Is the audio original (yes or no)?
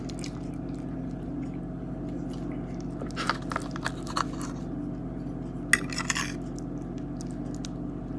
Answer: yes